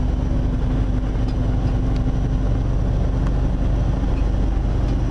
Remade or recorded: recorded